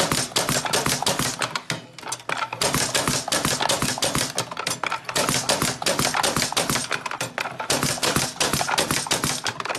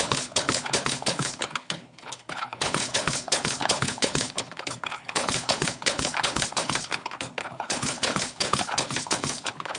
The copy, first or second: second